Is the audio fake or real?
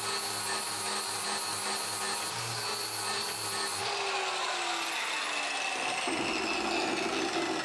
real